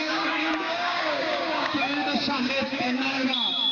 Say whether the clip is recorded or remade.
remade